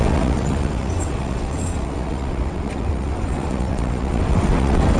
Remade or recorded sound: remade